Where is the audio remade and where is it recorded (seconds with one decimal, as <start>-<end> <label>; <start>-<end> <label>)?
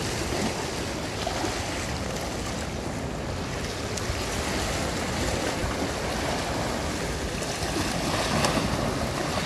0.0-9.5 recorded